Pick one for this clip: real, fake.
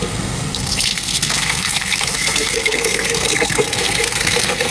fake